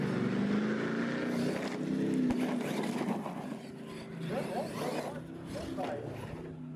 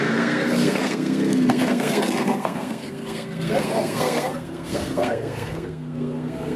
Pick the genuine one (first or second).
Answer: first